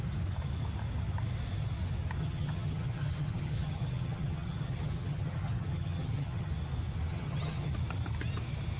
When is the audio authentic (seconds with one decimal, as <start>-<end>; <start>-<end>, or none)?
0.0-2.2; 6.5-7.1; 7.7-8.8